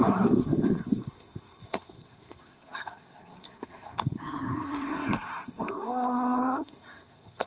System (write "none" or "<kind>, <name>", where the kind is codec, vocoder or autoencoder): codec, SNAC